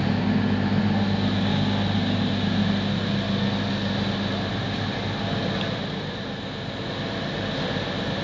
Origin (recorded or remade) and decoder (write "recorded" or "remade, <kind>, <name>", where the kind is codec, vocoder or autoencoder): recorded